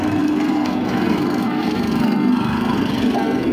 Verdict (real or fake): fake